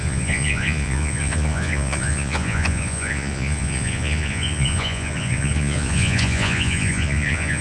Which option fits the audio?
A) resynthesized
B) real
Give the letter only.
A